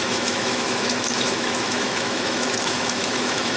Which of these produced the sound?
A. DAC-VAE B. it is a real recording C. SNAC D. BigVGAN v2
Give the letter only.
A